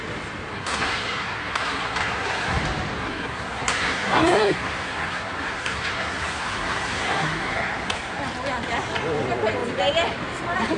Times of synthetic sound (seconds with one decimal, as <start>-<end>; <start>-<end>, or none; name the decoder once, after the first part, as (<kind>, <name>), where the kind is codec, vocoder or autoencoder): 0.5-2.6 (codec, SNAC); 3.0-8.2